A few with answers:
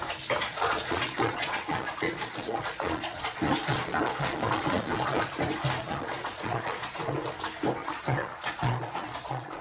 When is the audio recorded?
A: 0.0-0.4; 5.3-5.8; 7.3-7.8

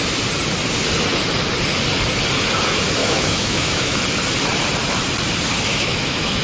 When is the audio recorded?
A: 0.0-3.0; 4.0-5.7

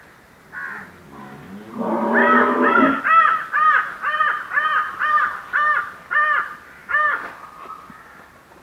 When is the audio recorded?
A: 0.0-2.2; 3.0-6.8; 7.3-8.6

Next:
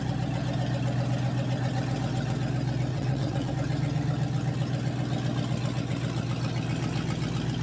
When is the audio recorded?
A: 0.0-2.9; 3.5-7.6

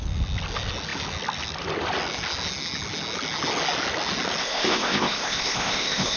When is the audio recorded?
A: 0.0-4.4

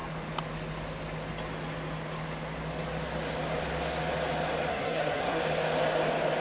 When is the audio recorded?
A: 0.0-4.7; 5.4-6.4

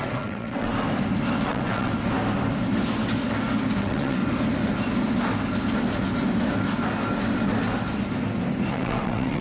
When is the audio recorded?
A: 0.7-1.4; 1.9-3.8; 4.2-8.7

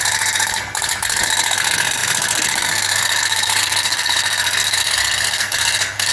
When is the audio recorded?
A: none